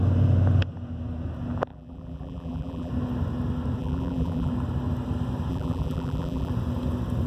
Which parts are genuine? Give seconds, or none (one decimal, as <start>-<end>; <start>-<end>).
0.0-1.7; 2.9-3.8; 4.5-5.5; 6.5-7.3